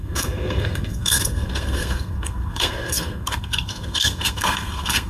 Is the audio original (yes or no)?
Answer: no